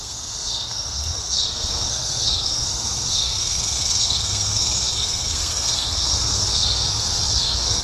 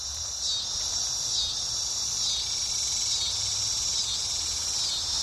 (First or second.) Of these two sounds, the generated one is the first